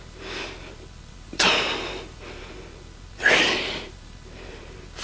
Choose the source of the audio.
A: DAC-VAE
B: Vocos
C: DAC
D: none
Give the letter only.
D